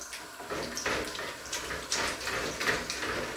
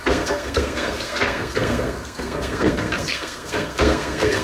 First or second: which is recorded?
first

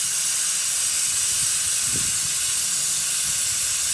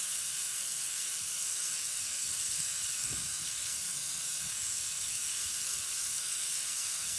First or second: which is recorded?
first